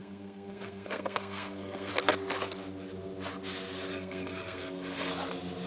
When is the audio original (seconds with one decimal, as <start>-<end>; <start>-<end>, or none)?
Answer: 1.9-3.9; 5.1-5.7